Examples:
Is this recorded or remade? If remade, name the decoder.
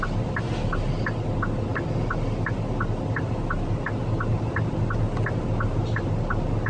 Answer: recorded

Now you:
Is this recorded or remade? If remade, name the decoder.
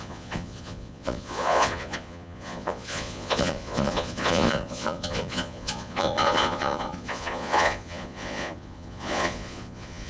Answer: remade, vocoder, Vocos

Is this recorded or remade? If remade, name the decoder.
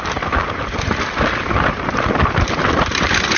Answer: recorded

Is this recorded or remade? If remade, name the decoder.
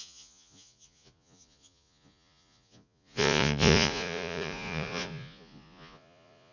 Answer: remade, vocoder, Vocos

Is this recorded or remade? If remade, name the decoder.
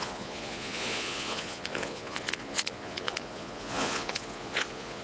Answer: remade, vocoder, Vocos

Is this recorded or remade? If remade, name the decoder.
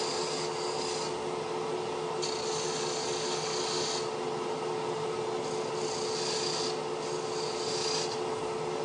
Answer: recorded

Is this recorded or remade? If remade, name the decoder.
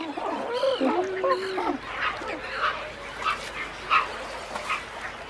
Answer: recorded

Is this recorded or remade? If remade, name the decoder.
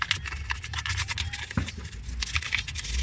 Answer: recorded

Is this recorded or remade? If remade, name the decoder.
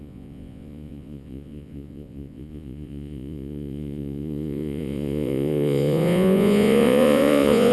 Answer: remade, vocoder, Vocos